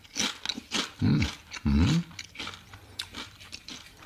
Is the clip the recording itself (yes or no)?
yes